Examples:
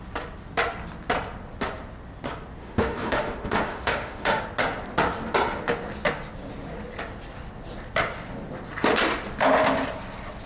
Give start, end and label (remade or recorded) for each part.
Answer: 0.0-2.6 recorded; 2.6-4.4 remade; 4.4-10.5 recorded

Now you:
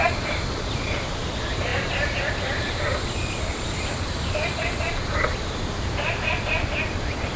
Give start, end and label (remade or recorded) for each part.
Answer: 0.0-7.4 remade

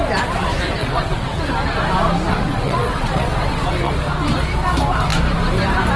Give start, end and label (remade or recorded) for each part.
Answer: 0.0-0.8 recorded; 0.8-1.4 remade; 1.4-2.3 recorded; 2.3-3.9 remade; 3.9-6.0 recorded

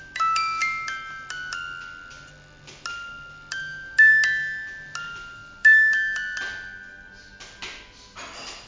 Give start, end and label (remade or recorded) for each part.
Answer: 0.0-8.7 recorded

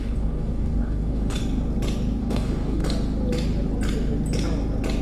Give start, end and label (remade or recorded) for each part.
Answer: 0.0-1.4 remade; 1.4-2.2 recorded; 2.2-2.8 remade; 2.8-5.0 recorded

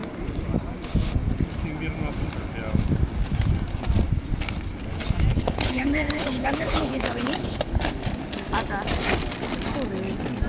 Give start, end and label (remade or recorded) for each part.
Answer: 0.0-5.3 recorded; 5.3-7.6 remade; 7.6-10.5 recorded

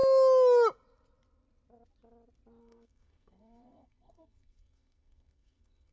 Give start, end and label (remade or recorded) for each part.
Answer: 0.0-2.6 recorded; 2.6-5.9 remade